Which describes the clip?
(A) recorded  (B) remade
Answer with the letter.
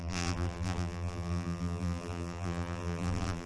B